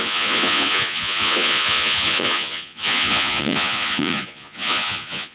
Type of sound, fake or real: fake